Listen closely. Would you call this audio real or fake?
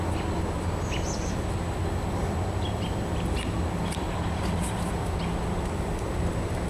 real